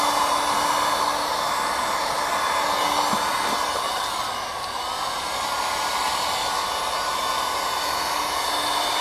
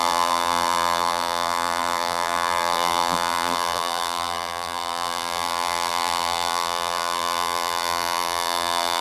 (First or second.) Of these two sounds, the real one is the first